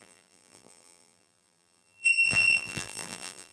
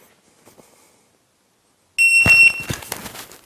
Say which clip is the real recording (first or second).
second